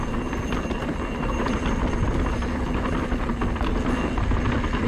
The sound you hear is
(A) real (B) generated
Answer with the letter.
A